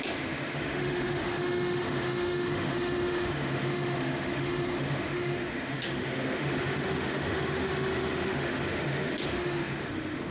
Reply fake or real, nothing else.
fake